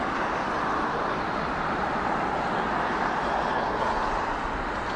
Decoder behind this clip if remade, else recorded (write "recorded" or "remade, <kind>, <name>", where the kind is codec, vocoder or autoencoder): recorded